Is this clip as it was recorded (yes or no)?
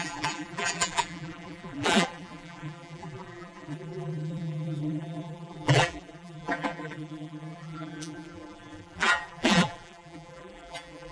no